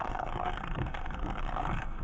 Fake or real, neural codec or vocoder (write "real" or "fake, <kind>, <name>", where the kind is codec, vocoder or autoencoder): fake, codec, SNAC